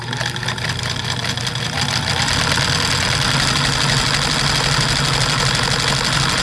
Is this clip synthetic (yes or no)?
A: no